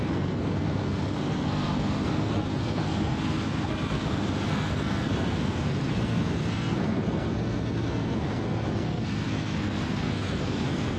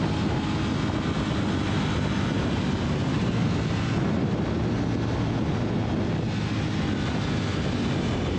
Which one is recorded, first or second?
second